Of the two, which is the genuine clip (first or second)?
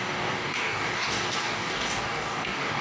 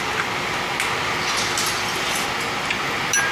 second